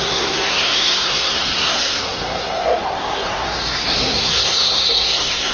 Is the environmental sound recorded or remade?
remade